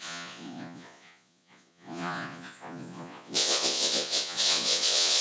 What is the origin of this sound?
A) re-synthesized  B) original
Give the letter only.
A